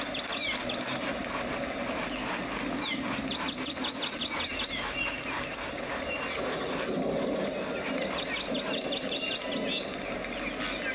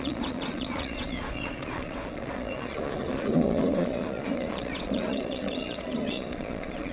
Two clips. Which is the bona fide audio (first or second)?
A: first